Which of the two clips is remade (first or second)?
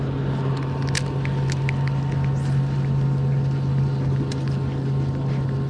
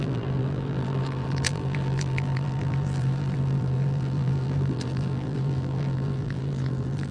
second